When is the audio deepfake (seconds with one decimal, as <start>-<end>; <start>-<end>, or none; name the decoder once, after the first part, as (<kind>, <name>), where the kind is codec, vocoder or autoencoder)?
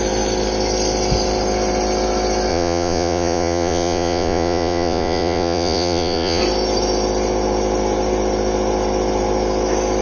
2.5-6.4 (vocoder, Vocos)